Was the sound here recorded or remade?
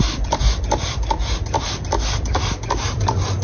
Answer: recorded